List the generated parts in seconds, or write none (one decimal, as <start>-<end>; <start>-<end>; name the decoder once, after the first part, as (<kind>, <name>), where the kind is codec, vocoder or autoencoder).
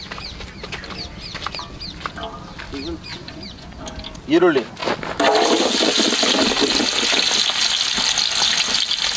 3.1-3.8 (vocoder, Vocos)